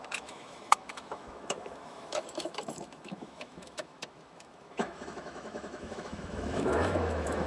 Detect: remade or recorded remade